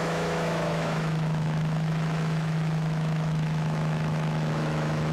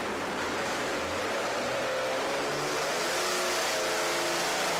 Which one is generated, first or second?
first